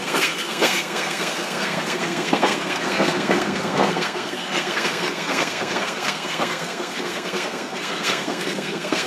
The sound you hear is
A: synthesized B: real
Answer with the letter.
A